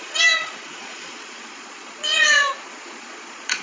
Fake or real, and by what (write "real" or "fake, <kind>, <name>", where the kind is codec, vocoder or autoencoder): fake, vocoder, Vocos